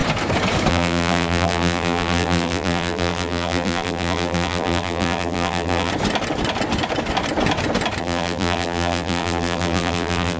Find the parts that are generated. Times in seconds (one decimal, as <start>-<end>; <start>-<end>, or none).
0.7-5.9; 8.0-10.4